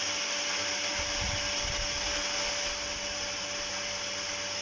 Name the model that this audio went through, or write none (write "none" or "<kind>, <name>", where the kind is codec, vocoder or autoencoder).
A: none